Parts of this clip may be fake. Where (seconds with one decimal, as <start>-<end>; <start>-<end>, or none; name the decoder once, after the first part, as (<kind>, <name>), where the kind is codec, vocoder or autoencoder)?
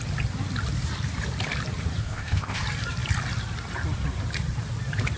2.0-2.6 (codec, ZipCodec)